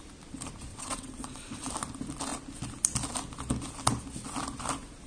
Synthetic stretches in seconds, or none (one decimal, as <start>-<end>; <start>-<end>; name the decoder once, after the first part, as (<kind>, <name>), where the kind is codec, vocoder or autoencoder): 0.7-1.7 (vocoder, WaveNeXt)